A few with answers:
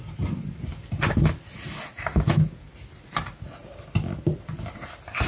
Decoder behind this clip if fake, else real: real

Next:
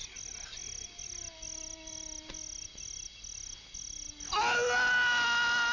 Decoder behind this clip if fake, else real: real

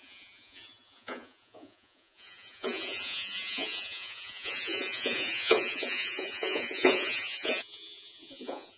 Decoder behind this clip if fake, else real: fake, vocoder, Vocos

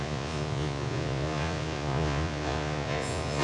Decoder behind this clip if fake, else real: fake, vocoder, Vocos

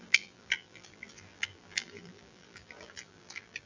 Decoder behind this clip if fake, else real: fake, vocoder, BigVGAN v2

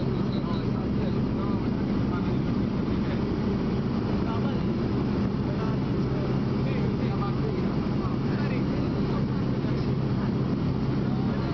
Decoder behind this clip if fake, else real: real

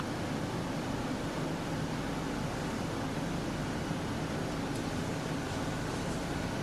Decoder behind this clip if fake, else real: real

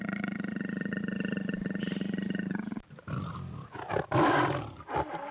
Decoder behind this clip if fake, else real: fake, vocoder, BigVGAN v2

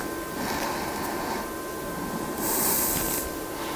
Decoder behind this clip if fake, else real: real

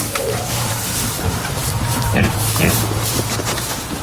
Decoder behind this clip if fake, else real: fake, vocoder, BigVGAN v2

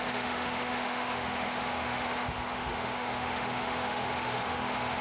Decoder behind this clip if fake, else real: fake, autoencoder, DAC-VAE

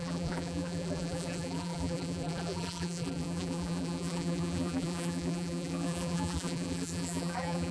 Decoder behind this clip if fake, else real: fake, vocoder, BigVGAN v2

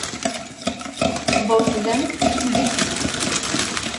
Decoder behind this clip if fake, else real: real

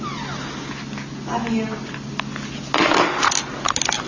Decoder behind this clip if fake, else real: real